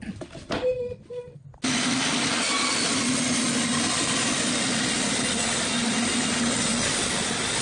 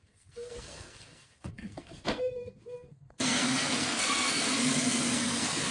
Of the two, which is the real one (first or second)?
first